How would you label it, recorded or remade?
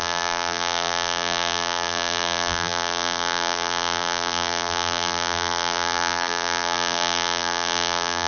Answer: remade